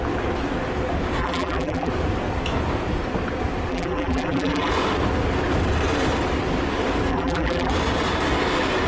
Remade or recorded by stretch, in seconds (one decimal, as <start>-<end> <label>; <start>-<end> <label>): 0.0-1.2 recorded; 1.2-1.9 remade; 1.9-3.7 recorded; 3.7-4.7 remade; 4.7-7.1 recorded; 7.1-7.7 remade; 7.7-8.9 recorded